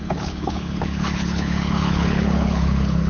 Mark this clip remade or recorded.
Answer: remade